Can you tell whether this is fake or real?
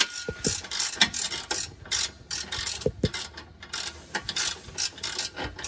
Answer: real